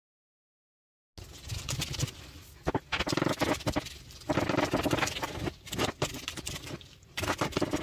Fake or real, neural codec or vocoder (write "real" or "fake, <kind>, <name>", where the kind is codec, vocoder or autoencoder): real